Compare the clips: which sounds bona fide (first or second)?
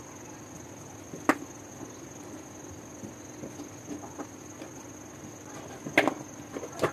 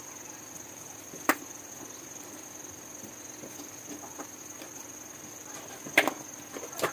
first